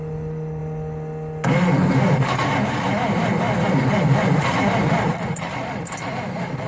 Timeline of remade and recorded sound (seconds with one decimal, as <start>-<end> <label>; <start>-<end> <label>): 0.0-2.4 recorded; 2.4-6.7 remade